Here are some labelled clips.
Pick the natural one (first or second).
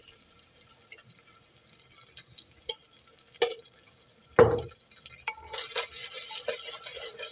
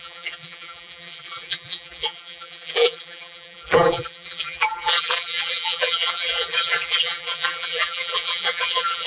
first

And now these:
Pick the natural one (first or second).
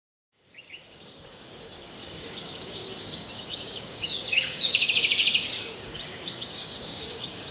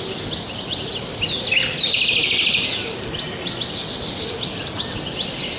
second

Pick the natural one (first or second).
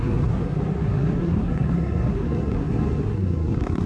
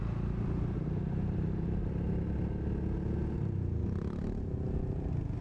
second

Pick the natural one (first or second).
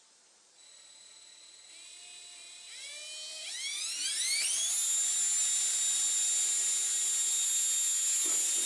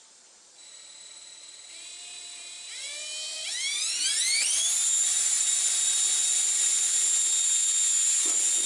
first